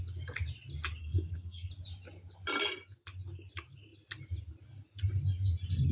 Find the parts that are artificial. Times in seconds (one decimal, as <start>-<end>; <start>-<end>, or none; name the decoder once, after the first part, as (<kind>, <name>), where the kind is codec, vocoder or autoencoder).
1.0-1.7 (codec, SNAC)